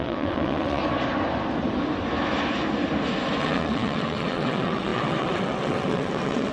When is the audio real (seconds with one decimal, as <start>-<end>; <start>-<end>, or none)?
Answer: 0.8-3.4